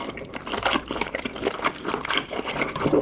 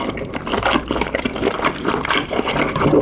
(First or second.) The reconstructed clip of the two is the first